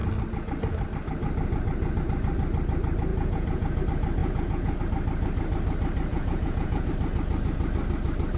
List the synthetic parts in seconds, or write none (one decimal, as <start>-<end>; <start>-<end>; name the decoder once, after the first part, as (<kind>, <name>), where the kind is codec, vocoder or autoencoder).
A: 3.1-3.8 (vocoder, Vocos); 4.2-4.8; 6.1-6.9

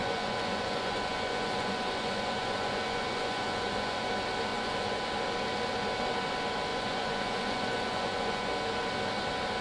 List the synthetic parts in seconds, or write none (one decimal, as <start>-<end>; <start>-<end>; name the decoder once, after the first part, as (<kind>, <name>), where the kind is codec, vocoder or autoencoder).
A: 0.0-4.0 (vocoder, Vocos); 4.5-5.0; 6.7-8.5

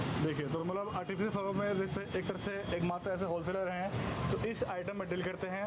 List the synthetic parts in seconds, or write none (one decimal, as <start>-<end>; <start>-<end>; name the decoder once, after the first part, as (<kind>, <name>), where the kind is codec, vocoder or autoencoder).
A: none

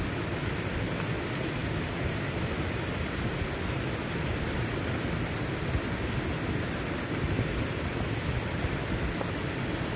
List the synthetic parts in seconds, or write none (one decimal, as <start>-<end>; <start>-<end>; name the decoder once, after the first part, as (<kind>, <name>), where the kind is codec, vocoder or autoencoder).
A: none